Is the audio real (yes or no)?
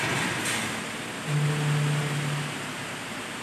yes